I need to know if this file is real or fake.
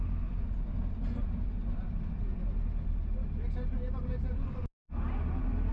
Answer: real